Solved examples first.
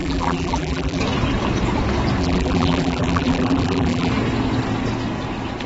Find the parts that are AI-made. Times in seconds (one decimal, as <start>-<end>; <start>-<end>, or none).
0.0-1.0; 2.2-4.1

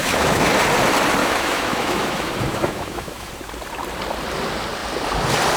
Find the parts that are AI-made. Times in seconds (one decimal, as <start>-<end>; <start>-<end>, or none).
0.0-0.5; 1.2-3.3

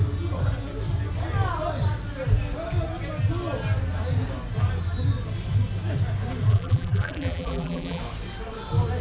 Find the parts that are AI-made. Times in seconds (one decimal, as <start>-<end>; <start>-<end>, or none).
6.5-8.0